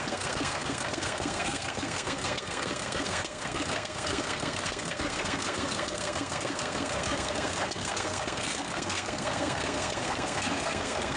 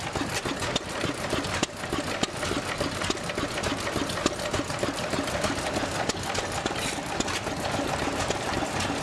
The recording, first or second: second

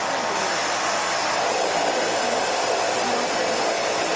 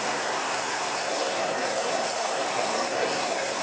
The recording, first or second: first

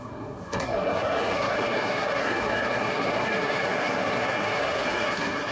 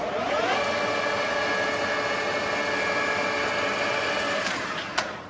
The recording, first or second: second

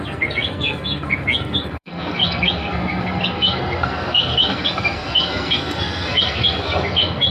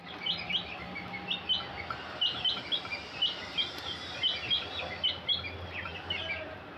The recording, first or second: second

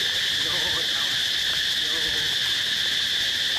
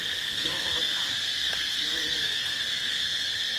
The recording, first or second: first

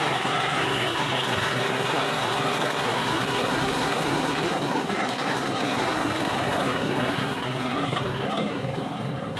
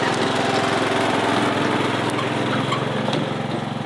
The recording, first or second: second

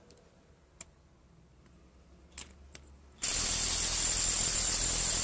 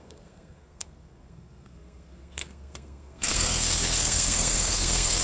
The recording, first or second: first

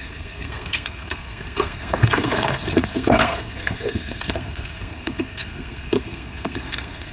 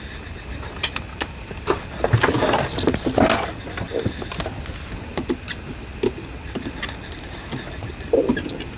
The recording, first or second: second